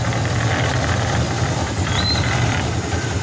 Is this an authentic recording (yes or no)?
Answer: yes